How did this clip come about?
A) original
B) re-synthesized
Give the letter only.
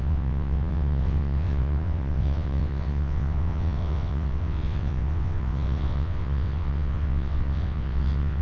B